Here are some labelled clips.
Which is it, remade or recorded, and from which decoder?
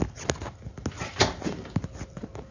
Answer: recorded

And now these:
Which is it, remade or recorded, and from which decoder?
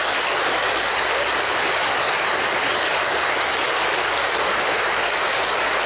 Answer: recorded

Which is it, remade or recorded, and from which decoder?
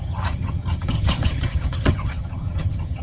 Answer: remade, vocoder, HiFi-GAN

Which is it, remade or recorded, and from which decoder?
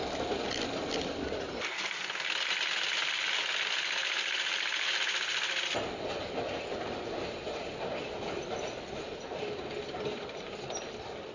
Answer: recorded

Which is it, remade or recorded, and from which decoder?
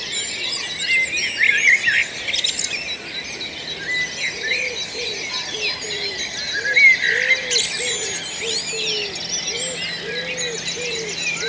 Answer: recorded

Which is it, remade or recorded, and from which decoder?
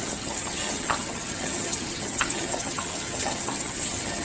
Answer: remade, vocoder, HiFi-GAN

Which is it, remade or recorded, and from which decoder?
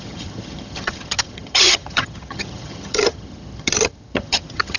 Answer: remade, vocoder, HiFi-GAN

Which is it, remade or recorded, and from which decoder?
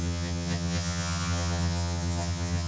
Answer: remade, vocoder, HiFi-GAN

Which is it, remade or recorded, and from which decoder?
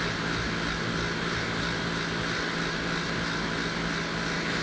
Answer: recorded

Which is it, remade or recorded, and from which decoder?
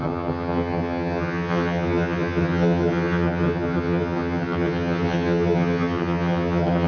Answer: remade, vocoder, HiFi-GAN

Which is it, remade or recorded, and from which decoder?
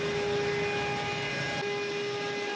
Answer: recorded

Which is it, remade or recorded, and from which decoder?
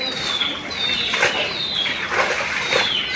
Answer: recorded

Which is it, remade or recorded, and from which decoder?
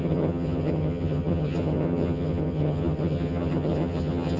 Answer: remade, vocoder, HiFi-GAN